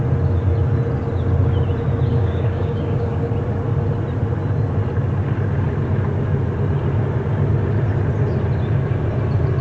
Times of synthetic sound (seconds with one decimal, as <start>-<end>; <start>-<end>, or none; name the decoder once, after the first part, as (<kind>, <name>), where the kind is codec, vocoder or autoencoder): 2.1-3.3 (codec, DAC)